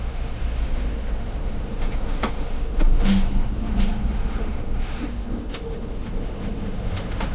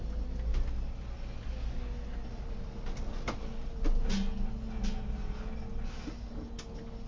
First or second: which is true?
second